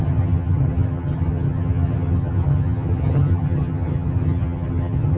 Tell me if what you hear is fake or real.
fake